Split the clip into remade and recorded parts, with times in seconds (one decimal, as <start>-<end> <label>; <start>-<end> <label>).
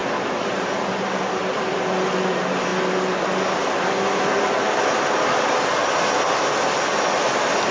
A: 0.0-7.7 recorded